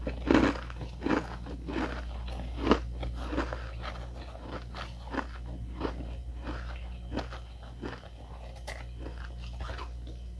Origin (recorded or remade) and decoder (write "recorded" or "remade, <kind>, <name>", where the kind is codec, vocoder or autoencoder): recorded